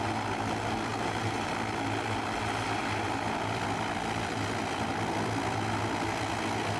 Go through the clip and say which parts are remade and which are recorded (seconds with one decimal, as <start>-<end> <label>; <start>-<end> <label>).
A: 0.0-0.9 recorded; 0.9-1.5 remade; 1.5-6.8 recorded